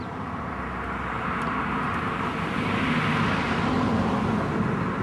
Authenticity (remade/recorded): recorded